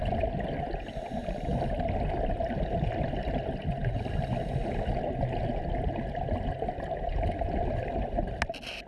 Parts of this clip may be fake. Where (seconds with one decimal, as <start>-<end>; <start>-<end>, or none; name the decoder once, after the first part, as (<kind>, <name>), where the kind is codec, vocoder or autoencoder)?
none